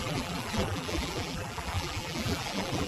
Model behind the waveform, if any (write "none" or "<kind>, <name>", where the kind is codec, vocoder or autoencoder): vocoder, BigVGAN v2